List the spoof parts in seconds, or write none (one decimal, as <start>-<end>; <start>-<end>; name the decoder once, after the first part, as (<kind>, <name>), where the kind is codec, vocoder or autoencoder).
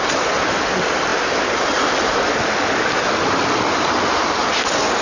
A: none